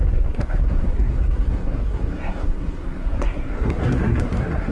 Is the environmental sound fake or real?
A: fake